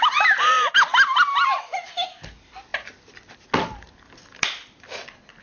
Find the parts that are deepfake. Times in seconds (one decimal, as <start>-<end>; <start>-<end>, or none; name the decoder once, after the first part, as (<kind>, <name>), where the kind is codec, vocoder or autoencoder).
none